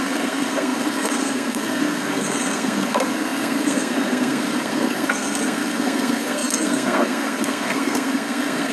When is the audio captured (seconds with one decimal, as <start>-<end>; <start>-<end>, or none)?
none